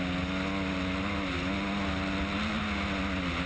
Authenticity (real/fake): real